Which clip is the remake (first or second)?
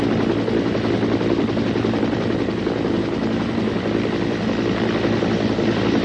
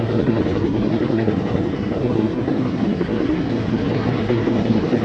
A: second